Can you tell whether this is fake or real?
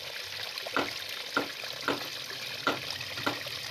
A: real